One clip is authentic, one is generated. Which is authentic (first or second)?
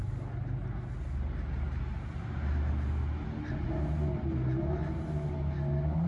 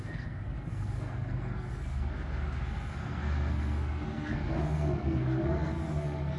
first